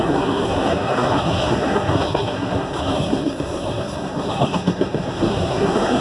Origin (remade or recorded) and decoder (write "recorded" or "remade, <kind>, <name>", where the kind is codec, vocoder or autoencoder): remade, codec, SNAC